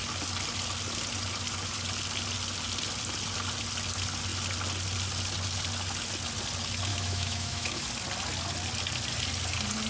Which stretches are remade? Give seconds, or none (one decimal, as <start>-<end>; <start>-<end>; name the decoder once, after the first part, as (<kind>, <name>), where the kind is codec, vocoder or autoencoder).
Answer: 6.9-7.9 (autoencoder, DAC-VAE)